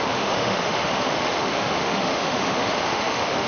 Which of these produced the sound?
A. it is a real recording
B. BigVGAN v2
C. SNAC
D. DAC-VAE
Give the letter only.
D